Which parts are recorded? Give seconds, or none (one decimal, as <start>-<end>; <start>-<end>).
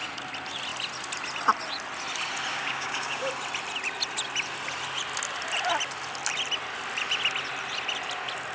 0.0-2.5; 3.3-8.5